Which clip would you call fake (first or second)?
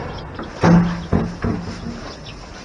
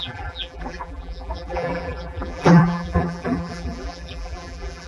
second